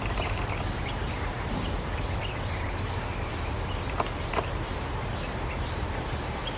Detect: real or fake fake